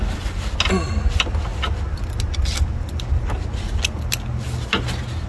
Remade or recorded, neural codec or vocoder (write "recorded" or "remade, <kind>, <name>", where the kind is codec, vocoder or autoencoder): recorded